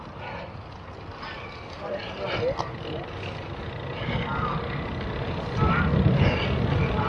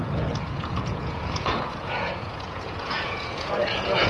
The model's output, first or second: second